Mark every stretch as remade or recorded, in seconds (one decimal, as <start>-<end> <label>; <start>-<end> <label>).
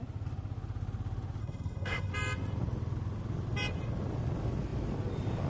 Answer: 0.0-1.4 recorded; 1.4-2.1 remade; 2.1-5.5 recorded